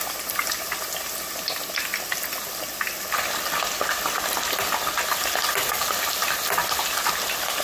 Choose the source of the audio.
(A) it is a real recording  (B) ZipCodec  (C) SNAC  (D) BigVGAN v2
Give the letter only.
A